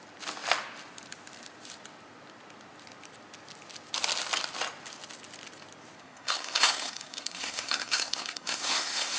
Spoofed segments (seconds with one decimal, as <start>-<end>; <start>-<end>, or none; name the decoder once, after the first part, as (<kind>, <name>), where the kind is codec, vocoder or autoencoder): 6.0-9.2 (codec, SNAC)